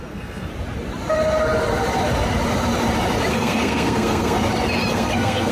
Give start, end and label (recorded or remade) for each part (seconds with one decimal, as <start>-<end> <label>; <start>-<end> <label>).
0.0-0.5 remade; 0.5-3.3 recorded; 3.3-4.4 remade; 4.4-4.9 recorded; 4.9-5.5 remade